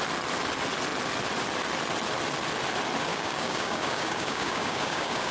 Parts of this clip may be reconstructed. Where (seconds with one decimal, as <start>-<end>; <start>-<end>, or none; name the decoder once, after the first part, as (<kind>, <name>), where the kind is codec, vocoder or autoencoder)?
3.1-5.3 (codec, DAC)